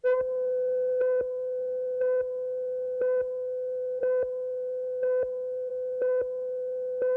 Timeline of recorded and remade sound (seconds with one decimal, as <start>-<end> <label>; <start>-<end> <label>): 0.0-7.2 recorded